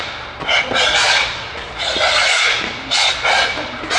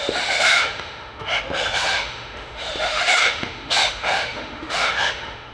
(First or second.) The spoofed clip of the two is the second